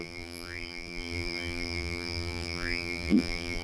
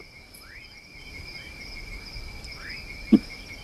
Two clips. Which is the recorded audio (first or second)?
second